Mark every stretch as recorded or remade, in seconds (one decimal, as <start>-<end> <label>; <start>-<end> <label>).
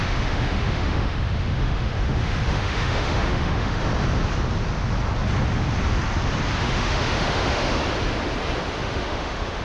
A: 0.0-3.9 remade; 3.9-6.6 recorded; 6.6-7.8 remade; 7.8-8.7 recorded; 8.7-9.6 remade